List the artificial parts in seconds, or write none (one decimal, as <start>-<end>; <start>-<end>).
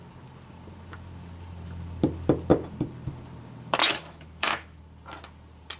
3.8-4.8